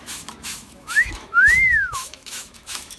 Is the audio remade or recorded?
remade